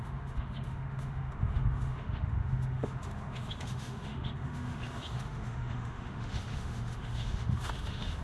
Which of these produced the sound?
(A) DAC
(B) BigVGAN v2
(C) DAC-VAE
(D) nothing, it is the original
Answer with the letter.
C